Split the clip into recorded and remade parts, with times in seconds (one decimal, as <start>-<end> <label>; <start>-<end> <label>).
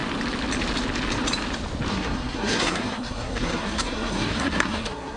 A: 0.0-1.9 recorded; 1.9-5.2 remade